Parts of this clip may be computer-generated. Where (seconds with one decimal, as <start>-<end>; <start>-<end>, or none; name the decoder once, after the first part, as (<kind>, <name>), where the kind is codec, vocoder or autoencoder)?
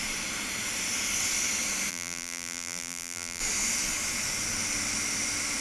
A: 1.9-3.4 (vocoder, BigVGAN v2)